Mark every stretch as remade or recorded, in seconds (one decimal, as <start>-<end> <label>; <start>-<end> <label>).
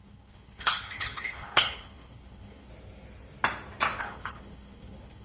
0.0-2.7 remade; 2.7-4.0 recorded; 4.0-5.2 remade